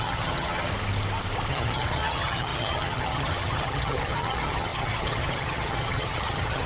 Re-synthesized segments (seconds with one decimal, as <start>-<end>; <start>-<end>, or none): 0.0-0.7; 1.5-6.7